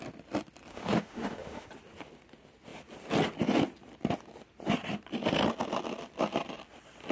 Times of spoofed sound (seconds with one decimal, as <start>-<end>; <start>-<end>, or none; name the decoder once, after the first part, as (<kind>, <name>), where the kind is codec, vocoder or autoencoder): 0.7-1.7 (autoencoder, DAC-VAE)